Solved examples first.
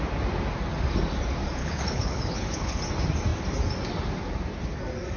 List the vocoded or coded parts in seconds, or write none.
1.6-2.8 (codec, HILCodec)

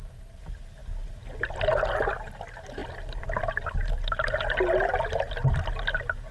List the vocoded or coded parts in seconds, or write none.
none